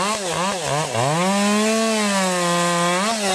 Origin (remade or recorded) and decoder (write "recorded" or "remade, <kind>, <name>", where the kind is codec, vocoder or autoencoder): recorded